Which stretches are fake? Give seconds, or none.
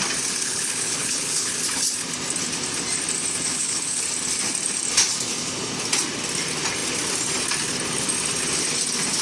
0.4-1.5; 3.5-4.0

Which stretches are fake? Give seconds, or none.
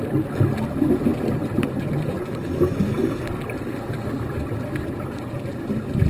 none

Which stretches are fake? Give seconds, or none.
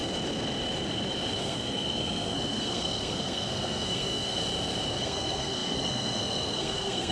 1.4-4.4; 5.0-7.1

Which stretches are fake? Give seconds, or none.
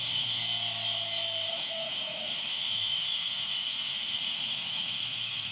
0.0-0.4; 1.5-5.5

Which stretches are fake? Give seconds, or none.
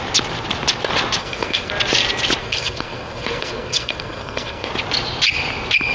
1.2-1.7; 2.4-4.7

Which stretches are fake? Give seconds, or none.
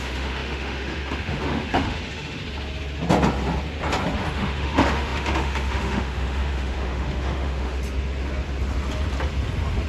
0.0-2.4; 4.3-7.8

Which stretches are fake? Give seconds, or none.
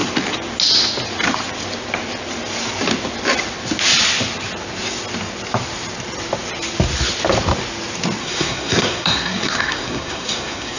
8.2-10.8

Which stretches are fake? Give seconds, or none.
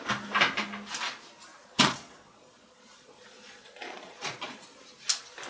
1.5-4.8